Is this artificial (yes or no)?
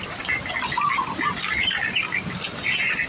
no